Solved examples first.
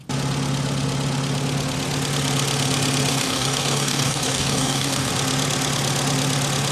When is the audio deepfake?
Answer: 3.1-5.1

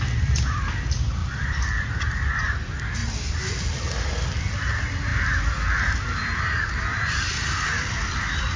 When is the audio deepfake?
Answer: 0.0-3.0; 3.7-8.6